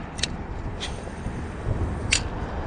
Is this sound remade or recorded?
remade